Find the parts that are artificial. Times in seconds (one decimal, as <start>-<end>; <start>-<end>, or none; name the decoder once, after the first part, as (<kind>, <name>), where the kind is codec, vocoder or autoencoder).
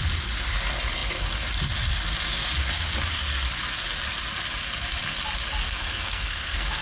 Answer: 5.6-6.8 (codec, SNAC)